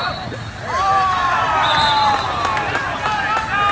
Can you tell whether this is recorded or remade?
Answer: recorded